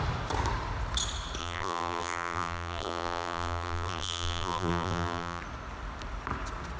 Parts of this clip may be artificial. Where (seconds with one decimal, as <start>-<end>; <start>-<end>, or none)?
1.4-5.4